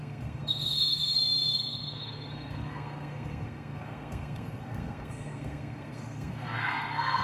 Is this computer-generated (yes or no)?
yes